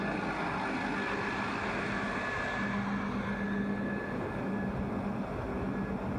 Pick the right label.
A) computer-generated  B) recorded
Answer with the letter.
B